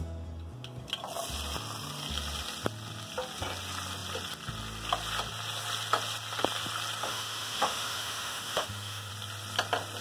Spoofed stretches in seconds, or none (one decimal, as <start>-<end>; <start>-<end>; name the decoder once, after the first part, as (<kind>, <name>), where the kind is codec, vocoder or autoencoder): 7.0-9.1 (autoencoder, DAC-VAE)